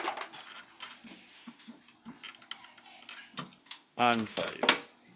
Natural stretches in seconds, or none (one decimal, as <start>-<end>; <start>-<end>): 0.0-1.3; 1.8-3.6; 4.5-5.2